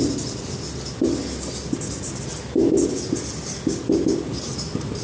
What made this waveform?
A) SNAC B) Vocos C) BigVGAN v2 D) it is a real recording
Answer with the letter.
D